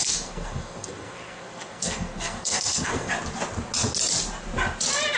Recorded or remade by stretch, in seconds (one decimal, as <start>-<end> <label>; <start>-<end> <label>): 0.0-3.1 remade; 3.1-5.2 recorded